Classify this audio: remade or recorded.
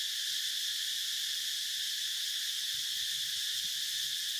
recorded